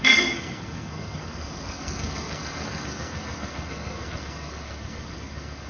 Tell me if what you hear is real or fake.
fake